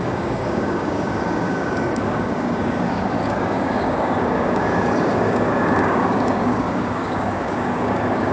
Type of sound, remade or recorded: remade